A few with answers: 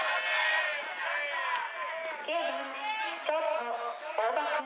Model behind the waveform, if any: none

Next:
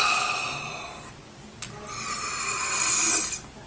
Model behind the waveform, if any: none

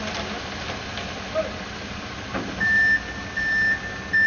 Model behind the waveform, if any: none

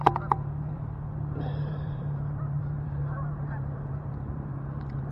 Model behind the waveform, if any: vocoder, BigVGAN v2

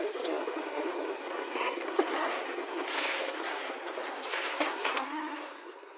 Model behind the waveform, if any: codec, SNAC